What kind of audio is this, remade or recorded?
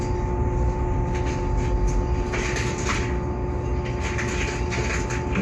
recorded